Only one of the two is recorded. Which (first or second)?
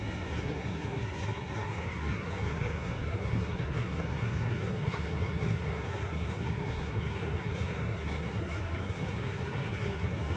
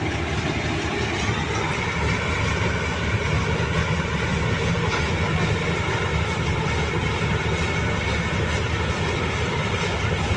second